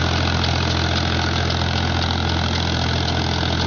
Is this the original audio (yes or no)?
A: yes